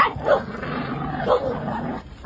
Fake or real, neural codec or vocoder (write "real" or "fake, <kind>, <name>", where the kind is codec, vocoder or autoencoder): real